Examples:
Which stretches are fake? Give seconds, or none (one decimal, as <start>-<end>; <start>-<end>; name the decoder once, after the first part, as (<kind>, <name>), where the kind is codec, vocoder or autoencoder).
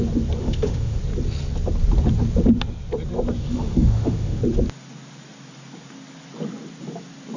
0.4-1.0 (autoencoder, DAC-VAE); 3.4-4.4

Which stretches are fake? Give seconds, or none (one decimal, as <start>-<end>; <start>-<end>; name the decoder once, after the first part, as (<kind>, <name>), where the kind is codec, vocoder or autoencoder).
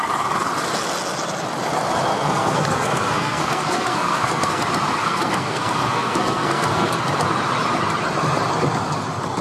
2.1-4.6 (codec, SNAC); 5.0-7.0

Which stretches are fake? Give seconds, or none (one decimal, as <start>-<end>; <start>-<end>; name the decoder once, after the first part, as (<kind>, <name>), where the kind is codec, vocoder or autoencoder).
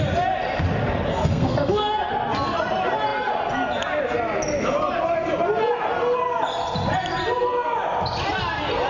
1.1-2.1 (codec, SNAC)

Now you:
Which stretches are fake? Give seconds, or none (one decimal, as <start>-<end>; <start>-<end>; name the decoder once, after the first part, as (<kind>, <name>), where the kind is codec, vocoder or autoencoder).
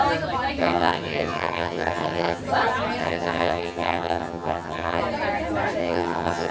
0.6-2.4 (vocoder, HiFi-GAN); 3.0-5.0; 5.8-6.5